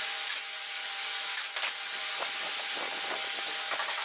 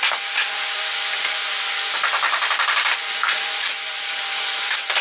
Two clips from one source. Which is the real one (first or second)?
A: first